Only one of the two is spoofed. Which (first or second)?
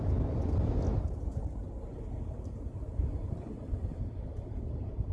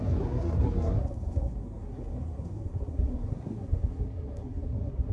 second